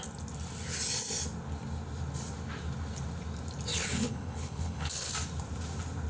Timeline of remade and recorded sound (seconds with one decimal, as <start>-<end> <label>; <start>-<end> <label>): 0.0-3.7 recorded; 3.7-5.1 remade; 5.1-6.1 recorded